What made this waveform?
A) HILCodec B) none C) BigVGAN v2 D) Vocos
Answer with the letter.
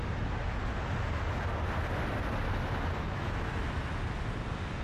B